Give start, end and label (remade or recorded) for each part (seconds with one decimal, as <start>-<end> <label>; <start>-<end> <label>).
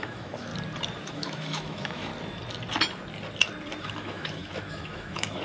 0.0-0.5 remade; 0.5-1.1 recorded; 1.1-2.1 remade; 2.1-3.8 recorded; 3.8-5.4 remade